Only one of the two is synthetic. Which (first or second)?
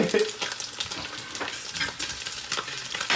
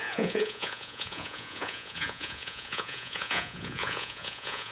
second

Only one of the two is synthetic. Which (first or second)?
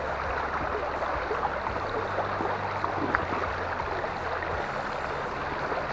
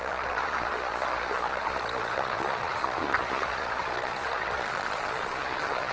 second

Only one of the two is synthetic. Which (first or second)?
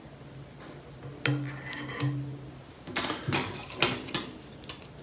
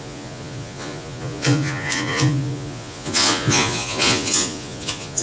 second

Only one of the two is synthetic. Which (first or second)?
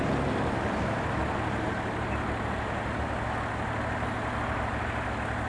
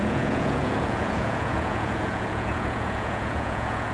second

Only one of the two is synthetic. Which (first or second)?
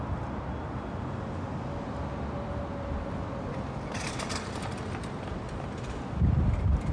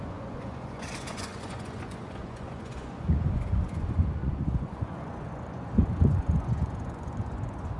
second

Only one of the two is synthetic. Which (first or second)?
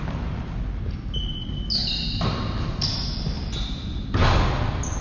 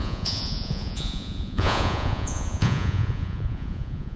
second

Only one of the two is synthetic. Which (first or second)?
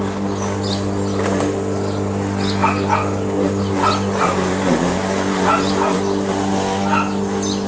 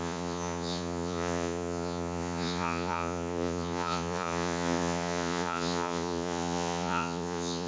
second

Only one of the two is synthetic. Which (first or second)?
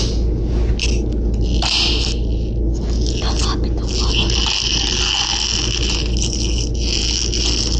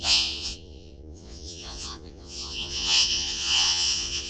second